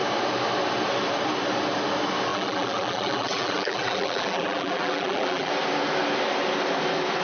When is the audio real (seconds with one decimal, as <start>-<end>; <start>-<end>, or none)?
0.0-2.3; 5.5-7.2

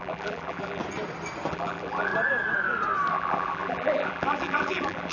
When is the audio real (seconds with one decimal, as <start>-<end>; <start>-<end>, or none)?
0.8-1.5; 2.1-3.1